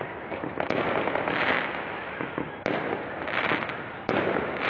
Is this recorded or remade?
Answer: recorded